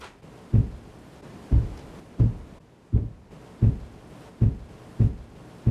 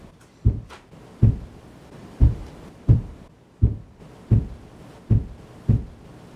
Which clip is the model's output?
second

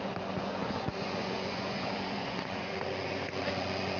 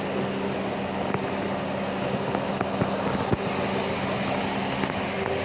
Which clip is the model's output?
first